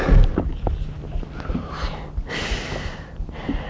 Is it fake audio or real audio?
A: real